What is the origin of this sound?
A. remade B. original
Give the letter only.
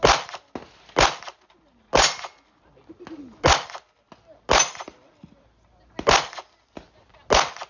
B